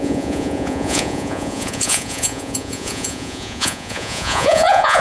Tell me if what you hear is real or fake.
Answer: fake